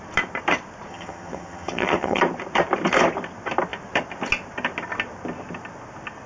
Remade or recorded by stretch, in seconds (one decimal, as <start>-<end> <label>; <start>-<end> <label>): 0.0-0.9 recorded; 0.9-2.2 remade; 2.2-6.3 recorded